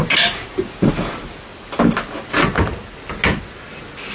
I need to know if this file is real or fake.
real